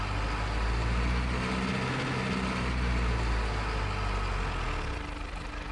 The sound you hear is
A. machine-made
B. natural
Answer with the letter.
B